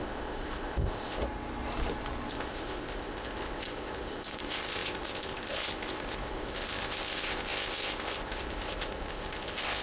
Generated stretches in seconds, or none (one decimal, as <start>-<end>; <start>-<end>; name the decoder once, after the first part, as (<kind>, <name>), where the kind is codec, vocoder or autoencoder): 0.0-1.2 (codec, ZipCodec); 2.3-9.8